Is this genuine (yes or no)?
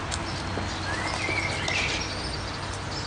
yes